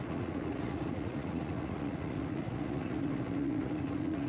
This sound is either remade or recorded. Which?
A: remade